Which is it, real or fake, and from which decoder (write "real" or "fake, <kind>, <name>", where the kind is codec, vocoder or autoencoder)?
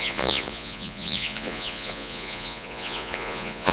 fake, vocoder, Vocos